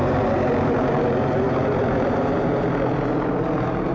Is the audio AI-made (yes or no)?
no